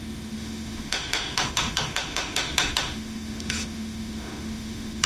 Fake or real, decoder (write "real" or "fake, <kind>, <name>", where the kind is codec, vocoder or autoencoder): fake, autoencoder, DAC-VAE